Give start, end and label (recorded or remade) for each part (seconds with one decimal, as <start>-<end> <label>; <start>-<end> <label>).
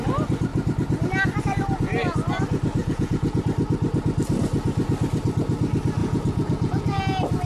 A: 0.0-2.8 recorded; 2.8-3.4 remade; 3.4-6.0 recorded; 6.0-7.0 remade; 7.0-7.5 recorded